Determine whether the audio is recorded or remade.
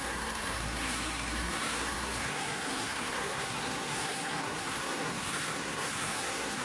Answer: remade